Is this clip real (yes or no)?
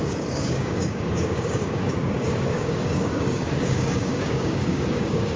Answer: no